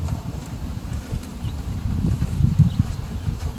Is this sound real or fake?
fake